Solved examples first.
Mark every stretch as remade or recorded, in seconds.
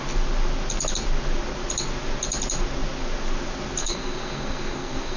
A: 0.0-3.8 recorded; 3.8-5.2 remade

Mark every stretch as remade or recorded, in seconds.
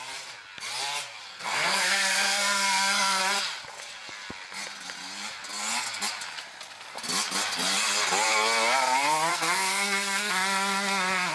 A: 0.0-1.3 recorded; 1.3-3.2 remade; 3.2-9.3 recorded; 9.3-10.3 remade; 10.3-11.3 recorded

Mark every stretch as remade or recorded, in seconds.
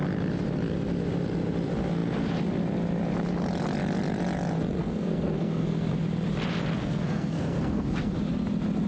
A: 0.0-4.8 recorded; 4.8-5.9 remade; 5.9-6.8 recorded; 6.8-8.2 remade; 8.2-8.9 recorded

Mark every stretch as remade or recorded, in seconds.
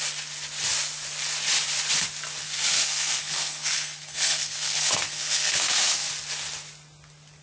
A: 0.0-2.4 recorded; 2.4-6.1 remade; 6.1-7.4 recorded